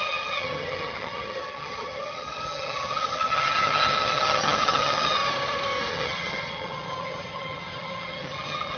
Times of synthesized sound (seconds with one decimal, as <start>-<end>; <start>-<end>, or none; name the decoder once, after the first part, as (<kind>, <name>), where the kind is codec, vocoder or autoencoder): 0.0-5.2 (vocoder, HiFi-GAN); 5.9-8.8